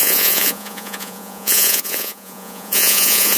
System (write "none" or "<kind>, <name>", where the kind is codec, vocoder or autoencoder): vocoder, Vocos